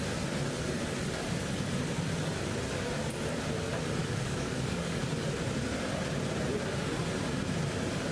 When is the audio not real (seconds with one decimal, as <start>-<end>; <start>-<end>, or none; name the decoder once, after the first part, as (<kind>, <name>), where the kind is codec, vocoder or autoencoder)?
4.0-5.0 (codec, DAC)